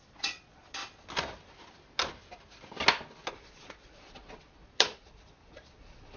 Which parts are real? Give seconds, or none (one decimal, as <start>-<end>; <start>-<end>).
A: 0.8-3.3